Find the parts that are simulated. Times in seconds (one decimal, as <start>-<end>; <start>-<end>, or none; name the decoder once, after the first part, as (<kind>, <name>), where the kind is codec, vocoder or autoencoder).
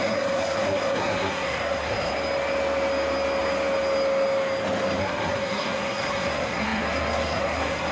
0.0-2.1 (codec, SNAC); 5.0-7.9